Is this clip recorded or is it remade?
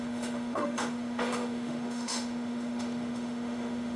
remade